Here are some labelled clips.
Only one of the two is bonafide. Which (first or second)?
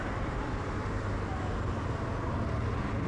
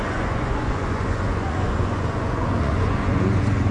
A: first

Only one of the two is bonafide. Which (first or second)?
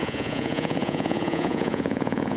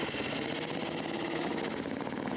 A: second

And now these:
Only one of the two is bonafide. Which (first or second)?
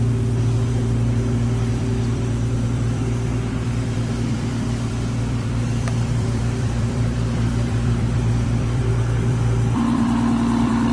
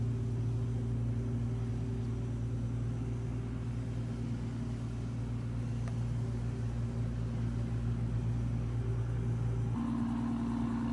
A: second